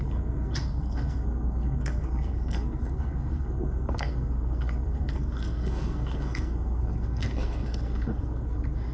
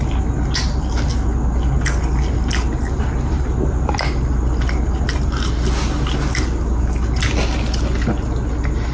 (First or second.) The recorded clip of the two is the second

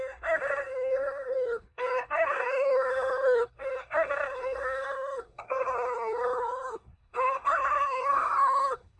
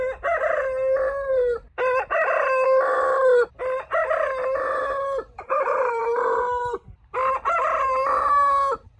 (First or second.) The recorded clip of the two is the second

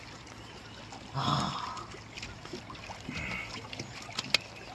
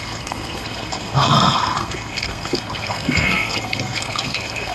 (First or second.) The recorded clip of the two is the first